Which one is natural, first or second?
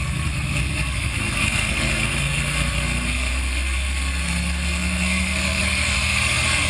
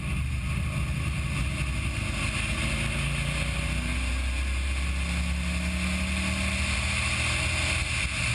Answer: second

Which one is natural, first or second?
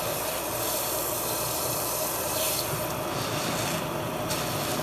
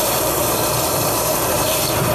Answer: first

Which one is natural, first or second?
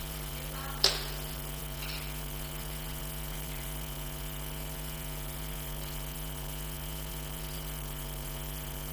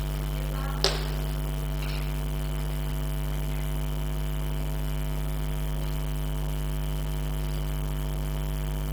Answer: second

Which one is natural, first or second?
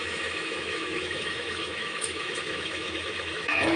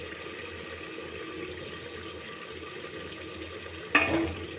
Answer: second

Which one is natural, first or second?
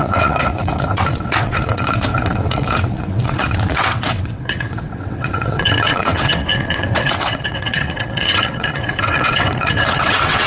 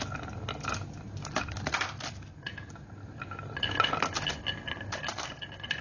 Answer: second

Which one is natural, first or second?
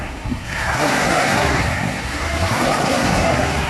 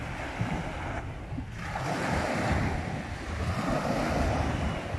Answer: second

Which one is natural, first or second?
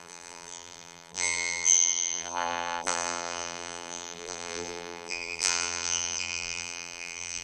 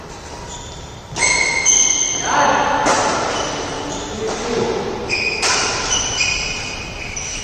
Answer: second